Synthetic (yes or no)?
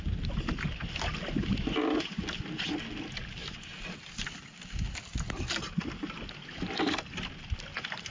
no